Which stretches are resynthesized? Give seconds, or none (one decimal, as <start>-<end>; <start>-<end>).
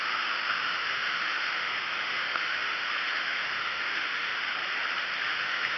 0.0-4.6; 5.2-5.8